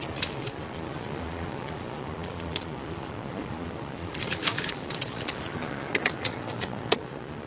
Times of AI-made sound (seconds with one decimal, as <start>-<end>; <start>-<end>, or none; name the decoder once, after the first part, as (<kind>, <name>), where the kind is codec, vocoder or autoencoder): 0.0-7.5 (vocoder, Vocos)